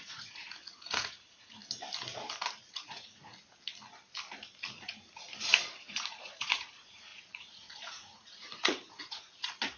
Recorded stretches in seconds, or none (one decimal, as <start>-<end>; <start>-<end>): 1.6-2.7; 3.3-5.6